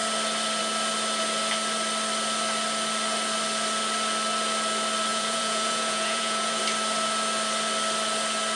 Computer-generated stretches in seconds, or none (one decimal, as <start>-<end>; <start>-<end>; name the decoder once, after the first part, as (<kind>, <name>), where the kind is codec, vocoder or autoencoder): 5.1-6.6 (vocoder, Vocos)